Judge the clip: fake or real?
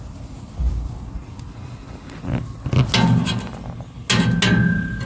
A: real